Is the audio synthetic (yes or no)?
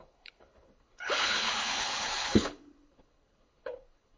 yes